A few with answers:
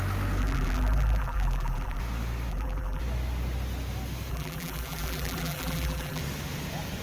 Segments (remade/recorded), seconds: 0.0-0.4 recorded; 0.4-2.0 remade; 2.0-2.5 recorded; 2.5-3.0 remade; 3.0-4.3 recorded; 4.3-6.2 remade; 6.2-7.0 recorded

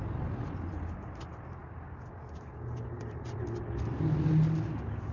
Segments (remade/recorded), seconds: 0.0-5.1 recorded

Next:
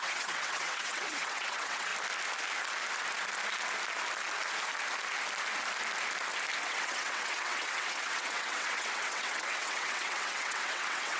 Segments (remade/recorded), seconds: 0.0-1.9 remade; 1.9-6.6 recorded; 6.6-11.2 remade

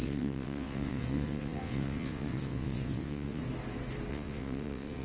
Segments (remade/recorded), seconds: 0.0-3.4 remade; 3.4-4.1 recorded; 4.1-5.0 remade

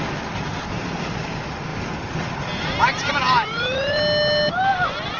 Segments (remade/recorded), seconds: 0.0-5.2 recorded

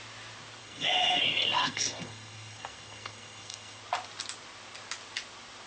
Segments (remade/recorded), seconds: 0.0-0.6 recorded; 0.6-1.2 remade; 1.2-1.6 recorded; 1.6-3.8 remade; 3.8-5.7 recorded